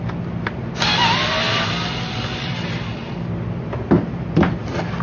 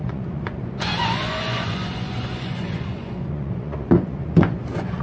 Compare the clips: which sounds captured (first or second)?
first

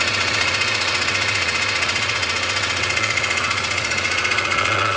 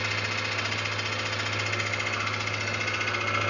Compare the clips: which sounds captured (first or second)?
second